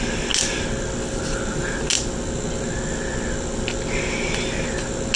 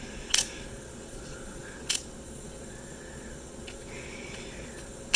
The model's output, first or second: second